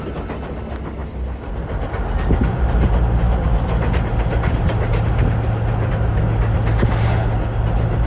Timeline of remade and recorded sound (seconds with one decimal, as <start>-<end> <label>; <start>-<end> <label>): 0.0-8.1 recorded